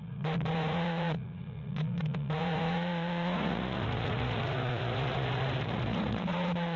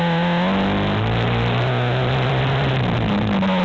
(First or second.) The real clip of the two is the second